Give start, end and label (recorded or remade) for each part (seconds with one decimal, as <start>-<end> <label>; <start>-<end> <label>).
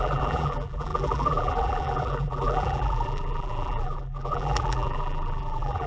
0.0-5.9 remade